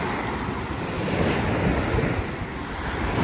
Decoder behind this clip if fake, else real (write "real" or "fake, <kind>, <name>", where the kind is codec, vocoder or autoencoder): real